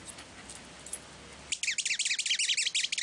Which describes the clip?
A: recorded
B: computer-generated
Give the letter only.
A